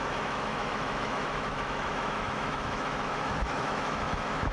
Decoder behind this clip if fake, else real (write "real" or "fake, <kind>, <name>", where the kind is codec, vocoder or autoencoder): fake, autoencoder, DAC-VAE